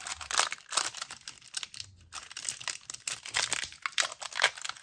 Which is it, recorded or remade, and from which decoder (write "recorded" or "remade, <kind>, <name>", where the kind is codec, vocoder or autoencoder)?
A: recorded